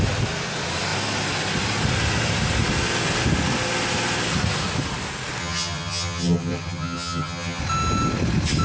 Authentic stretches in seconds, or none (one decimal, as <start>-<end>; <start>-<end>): 0.0-5.4; 7.6-8.6